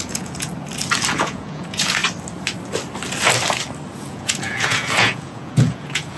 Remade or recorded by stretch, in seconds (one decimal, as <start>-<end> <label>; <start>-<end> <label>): 0.0-0.5 remade; 0.5-1.1 recorded; 1.1-2.0 remade; 2.0-4.0 recorded; 4.0-6.2 remade